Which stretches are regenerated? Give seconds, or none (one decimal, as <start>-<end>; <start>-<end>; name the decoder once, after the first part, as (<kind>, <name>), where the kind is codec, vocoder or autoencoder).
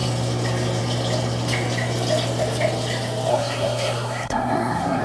3.3-5.0 (codec, SNAC)